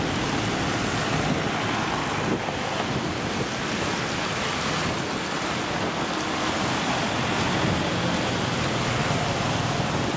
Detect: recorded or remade recorded